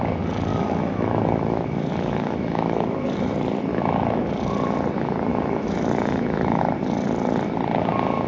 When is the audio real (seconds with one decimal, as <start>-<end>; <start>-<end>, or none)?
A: 0.0-0.5; 3.3-3.7; 4.2-5.3; 6.6-8.3